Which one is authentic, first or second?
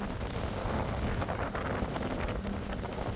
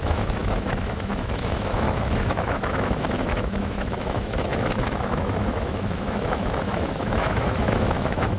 first